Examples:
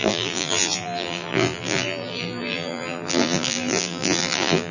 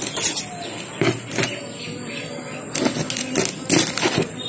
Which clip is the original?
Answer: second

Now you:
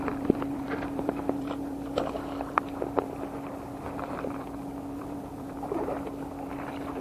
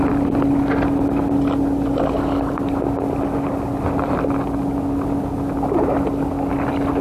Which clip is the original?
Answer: second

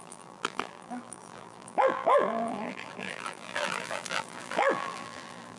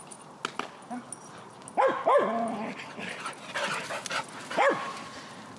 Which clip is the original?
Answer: second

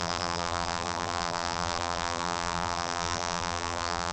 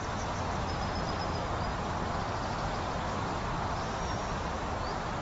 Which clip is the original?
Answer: second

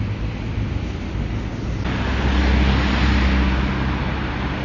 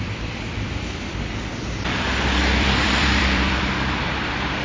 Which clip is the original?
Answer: first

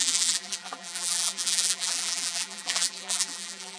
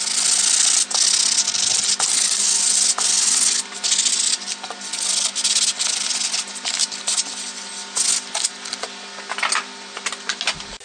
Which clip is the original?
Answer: second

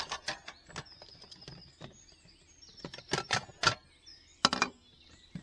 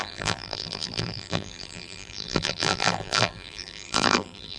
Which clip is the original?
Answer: first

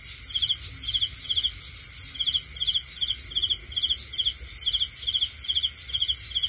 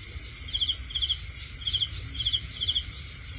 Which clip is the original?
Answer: first